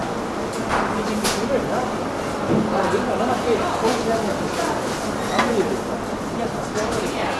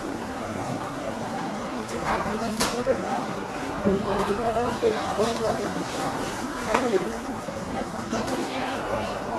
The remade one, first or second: second